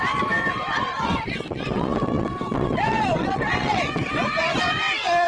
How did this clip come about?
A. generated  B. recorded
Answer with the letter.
A